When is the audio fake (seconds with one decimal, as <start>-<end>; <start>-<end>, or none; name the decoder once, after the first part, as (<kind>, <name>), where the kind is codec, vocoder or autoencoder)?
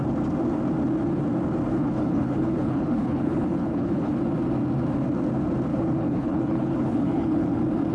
1.7-4.2 (codec, HILCodec); 5.7-7.5